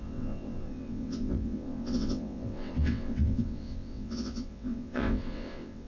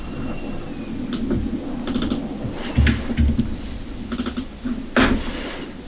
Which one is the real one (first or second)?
second